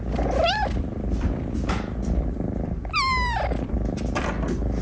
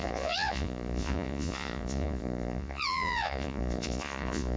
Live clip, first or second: first